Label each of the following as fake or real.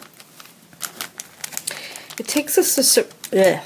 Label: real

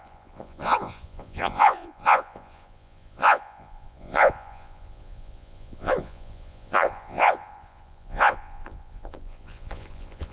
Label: fake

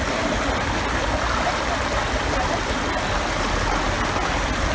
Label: real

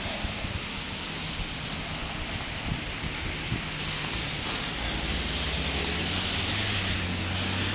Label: real